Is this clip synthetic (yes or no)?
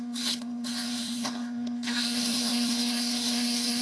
yes